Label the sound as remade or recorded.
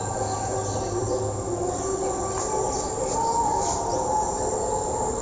recorded